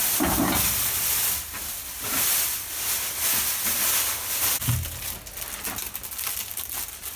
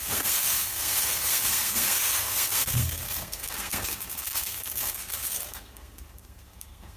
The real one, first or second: first